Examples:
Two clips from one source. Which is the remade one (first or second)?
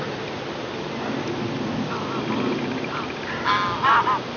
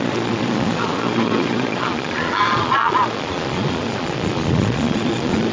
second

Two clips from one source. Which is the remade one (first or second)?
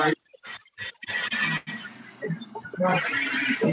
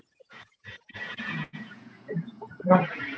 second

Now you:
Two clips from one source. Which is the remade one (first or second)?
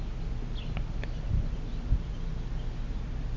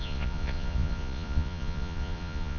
second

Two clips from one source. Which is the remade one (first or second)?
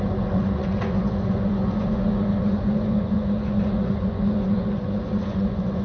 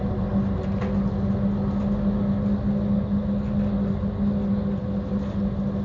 first